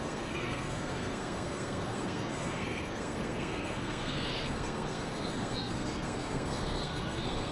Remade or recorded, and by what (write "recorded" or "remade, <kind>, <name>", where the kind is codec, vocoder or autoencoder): remade, codec, SNAC